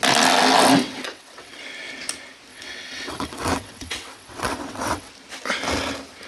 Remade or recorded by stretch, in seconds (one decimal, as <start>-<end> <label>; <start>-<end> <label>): 0.0-0.8 recorded; 0.8-1.6 remade; 1.6-2.5 recorded; 2.5-5.1 remade; 5.1-6.3 recorded